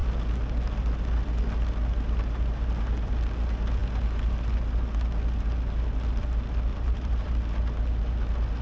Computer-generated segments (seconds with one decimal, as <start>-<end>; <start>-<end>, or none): 6.7-7.3

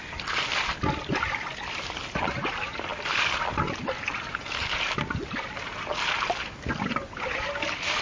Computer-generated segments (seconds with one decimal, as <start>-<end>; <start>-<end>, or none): none

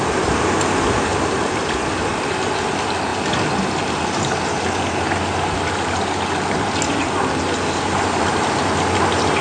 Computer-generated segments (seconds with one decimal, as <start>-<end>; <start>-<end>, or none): 1.1-1.9

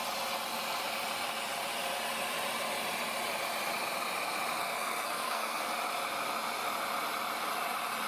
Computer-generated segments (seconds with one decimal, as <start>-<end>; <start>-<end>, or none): 4.6-5.7